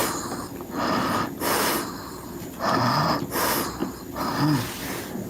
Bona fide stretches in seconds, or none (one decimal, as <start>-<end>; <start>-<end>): 0.0-5.3